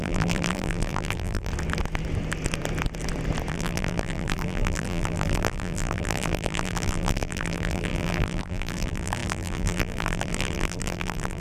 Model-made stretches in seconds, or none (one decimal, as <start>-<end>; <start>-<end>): 0.0-1.5; 3.5-11.4